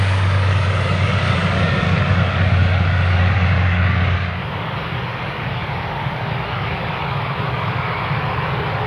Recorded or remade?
remade